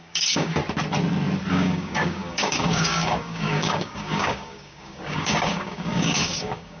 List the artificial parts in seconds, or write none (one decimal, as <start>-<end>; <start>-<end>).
0.0-0.6; 1.5-6.8